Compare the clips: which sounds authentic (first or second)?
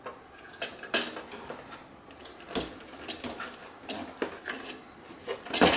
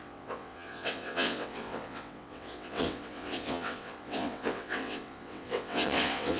first